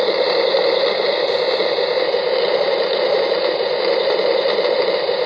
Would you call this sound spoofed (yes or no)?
no